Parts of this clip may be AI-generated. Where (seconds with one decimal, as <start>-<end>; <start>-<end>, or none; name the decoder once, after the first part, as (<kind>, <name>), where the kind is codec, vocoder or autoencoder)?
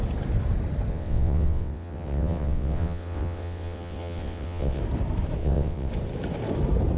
0.9-4.8 (vocoder, WaveNeXt); 5.4-5.9